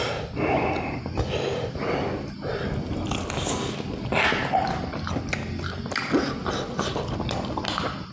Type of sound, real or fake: real